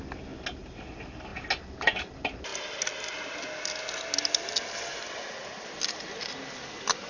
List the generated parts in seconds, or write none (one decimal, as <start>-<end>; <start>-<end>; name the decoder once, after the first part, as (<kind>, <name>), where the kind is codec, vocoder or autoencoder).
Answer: none